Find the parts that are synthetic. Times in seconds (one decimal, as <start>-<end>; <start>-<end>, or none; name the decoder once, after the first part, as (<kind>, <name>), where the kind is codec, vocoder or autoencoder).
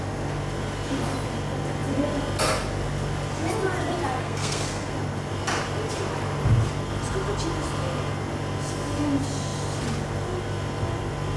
4.2-4.9 (codec, SNAC)